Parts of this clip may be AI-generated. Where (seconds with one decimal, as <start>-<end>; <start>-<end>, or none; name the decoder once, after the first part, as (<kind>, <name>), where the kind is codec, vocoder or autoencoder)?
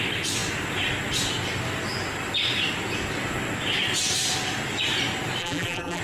5.4-6.0 (vocoder, BigVGAN v2)